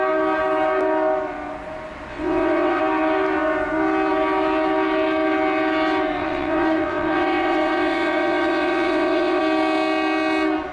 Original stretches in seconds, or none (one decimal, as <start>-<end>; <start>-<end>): 0.0-2.1; 2.8-6.2; 9.4-10.7